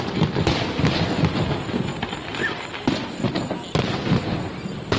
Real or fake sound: real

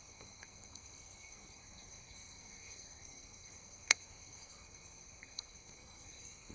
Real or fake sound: fake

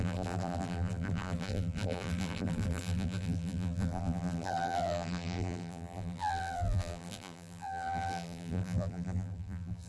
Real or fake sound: fake